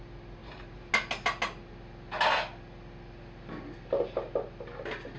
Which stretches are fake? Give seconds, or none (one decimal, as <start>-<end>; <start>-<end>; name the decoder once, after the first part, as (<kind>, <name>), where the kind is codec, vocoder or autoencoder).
0.4-0.9 (vocoder, BigVGAN v2)